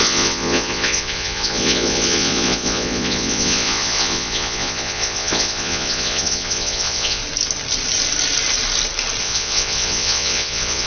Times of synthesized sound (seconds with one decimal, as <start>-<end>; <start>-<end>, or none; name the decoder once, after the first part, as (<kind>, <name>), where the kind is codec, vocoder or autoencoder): 0.0-7.2 (vocoder, Vocos); 9.2-10.9

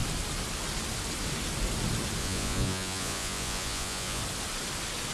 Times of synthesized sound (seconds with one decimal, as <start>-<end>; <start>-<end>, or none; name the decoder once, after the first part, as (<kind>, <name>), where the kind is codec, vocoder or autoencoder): 2.2-4.2 (vocoder, Vocos)

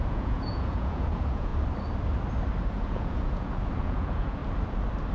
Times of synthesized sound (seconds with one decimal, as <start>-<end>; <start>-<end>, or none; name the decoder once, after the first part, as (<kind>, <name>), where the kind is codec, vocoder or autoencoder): 0.0-1.5 (vocoder, Vocos); 2.7-4.4